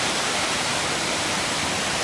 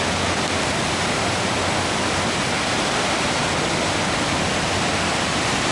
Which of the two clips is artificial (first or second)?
first